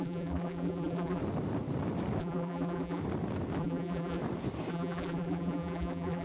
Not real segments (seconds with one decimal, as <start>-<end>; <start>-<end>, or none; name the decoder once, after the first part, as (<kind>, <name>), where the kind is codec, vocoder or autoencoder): 0.0-1.2 (vocoder, BigVGAN v2); 2.2-3.0; 3.6-4.2; 4.7-6.2